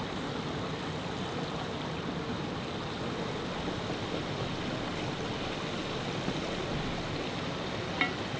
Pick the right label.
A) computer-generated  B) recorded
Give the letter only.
B